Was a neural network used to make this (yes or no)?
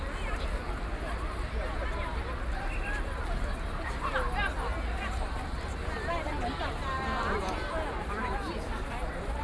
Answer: no